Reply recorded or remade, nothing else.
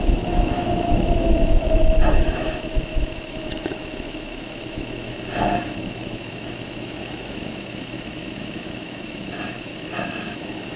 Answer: remade